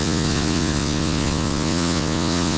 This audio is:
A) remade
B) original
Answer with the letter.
A